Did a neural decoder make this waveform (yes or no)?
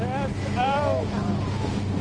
no